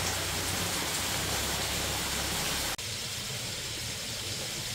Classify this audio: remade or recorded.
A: recorded